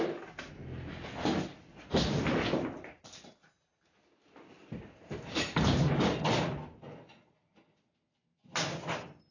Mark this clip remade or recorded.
recorded